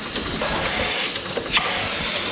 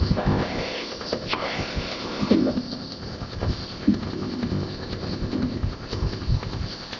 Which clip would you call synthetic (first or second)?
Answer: second